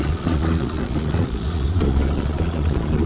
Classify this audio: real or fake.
fake